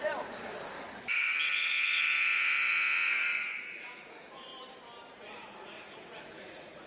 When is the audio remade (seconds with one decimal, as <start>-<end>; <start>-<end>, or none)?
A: 0.0-4.5; 5.1-6.9